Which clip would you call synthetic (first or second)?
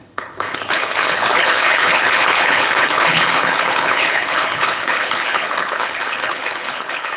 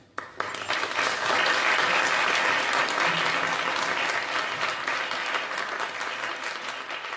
first